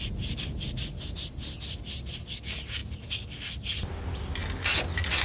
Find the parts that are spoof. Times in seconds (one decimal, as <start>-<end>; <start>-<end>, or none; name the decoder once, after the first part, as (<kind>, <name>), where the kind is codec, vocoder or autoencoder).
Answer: none